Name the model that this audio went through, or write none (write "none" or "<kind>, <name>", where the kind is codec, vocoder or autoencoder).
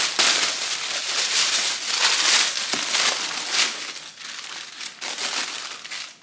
none